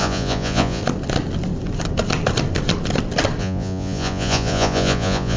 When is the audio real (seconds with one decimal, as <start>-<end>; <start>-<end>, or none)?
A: 0.8-3.4